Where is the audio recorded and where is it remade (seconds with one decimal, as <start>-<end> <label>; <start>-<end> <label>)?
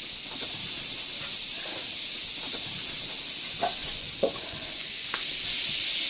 0.0-3.8 recorded; 3.8-5.1 remade; 5.1-6.1 recorded